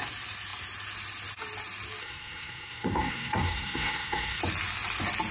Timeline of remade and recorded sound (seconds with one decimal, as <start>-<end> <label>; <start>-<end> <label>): 0.0-2.0 recorded; 2.0-4.4 remade; 4.4-5.3 recorded

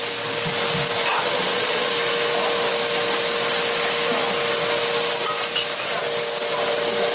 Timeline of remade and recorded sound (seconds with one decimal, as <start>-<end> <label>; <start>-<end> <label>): 0.0-1.1 recorded; 1.1-1.9 remade; 1.9-7.1 recorded

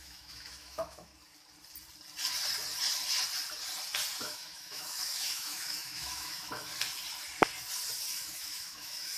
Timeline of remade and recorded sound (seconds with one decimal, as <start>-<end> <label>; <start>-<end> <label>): 0.0-1.1 remade; 1.1-4.2 recorded; 4.2-6.7 remade; 6.7-8.1 recorded; 8.1-9.2 remade

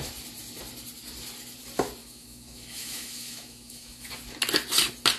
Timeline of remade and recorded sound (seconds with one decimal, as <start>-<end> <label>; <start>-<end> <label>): 0.0-2.0 recorded; 2.0-4.1 remade; 4.1-5.2 recorded

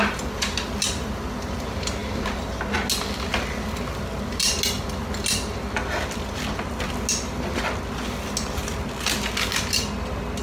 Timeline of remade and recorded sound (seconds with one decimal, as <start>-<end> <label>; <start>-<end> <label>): 0.0-10.4 recorded

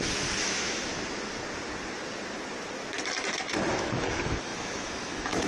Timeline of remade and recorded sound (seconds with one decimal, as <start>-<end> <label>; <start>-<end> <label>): 0.0-0.9 remade; 0.9-3.7 recorded; 3.7-5.5 remade

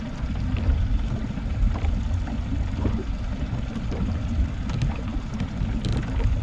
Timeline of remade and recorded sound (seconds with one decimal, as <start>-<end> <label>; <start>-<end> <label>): 0.0-6.4 recorded

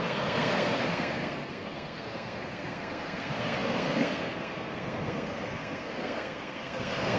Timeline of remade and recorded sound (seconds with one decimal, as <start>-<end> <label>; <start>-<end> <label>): 0.0-7.2 remade